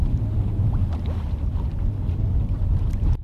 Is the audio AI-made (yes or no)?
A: no